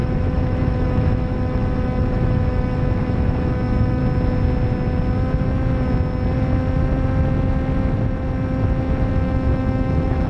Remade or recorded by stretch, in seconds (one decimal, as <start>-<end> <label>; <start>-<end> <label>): 0.0-4.0 remade; 4.0-9.1 recorded; 9.1-10.3 remade